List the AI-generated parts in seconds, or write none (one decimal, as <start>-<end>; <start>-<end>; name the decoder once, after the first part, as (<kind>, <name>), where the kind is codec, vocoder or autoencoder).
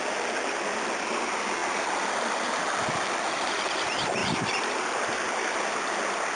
0.0-4.2 (vocoder, BigVGAN v2)